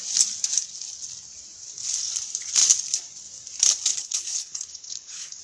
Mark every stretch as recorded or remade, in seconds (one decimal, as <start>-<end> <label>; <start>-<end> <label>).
0.0-3.9 recorded; 3.9-5.4 remade